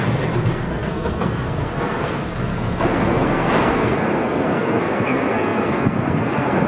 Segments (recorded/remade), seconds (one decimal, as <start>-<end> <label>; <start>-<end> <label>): 0.0-6.7 remade